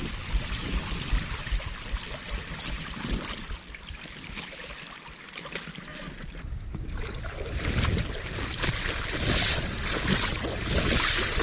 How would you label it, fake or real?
real